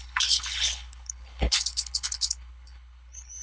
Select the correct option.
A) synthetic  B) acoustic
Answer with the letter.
A